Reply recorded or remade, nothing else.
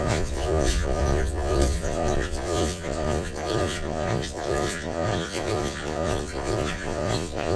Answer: remade